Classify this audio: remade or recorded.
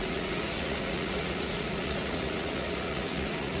remade